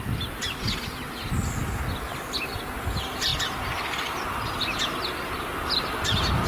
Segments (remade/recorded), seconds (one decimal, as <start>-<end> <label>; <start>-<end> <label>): 0.0-3.3 recorded; 3.3-4.9 remade; 4.9-6.5 recorded